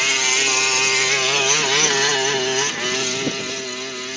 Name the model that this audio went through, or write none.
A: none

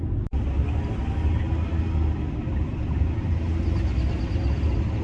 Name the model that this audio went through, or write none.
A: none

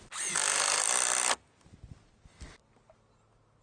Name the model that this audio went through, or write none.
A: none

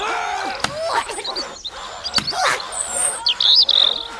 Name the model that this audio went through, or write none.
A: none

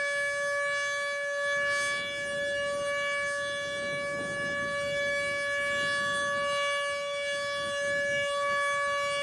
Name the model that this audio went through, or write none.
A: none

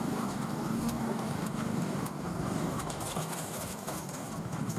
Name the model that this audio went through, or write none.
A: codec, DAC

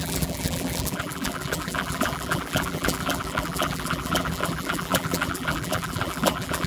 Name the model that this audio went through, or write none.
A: vocoder, BigVGAN v2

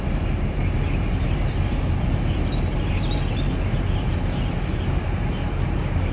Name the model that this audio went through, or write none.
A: none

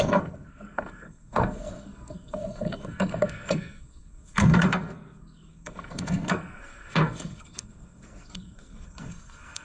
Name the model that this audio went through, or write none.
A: codec, SNAC